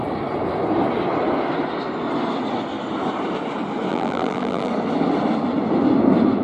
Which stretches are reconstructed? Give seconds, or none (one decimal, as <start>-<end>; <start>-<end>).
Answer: 3.9-4.7